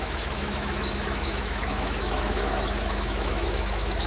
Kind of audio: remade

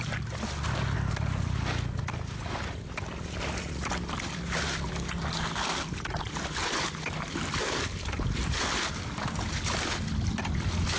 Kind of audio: recorded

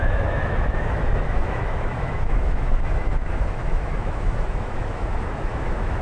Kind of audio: remade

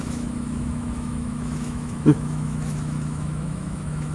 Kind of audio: remade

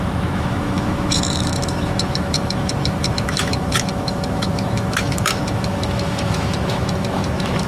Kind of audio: remade